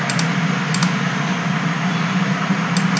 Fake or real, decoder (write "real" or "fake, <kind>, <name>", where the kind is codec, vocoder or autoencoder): real